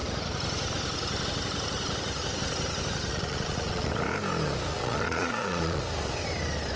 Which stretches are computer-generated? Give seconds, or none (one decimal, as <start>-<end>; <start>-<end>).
3.1-3.9; 4.7-5.8